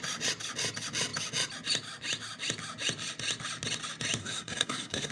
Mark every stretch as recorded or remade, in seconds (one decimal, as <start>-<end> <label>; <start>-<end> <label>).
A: 0.0-4.2 recorded; 4.2-5.1 remade